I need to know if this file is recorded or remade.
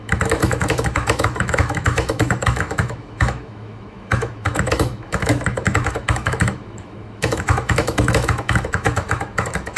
remade